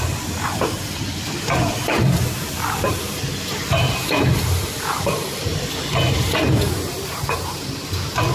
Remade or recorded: remade